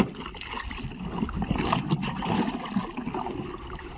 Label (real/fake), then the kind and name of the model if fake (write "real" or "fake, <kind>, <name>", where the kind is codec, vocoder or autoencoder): real